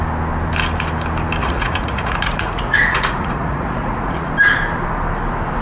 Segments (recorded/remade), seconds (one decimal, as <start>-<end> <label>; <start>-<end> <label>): 0.0-1.4 recorded; 1.4-4.3 remade; 4.3-5.6 recorded